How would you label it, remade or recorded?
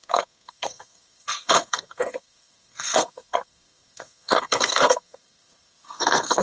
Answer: remade